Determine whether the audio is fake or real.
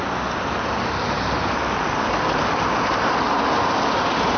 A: real